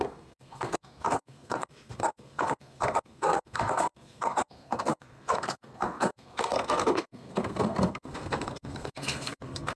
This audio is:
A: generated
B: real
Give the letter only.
A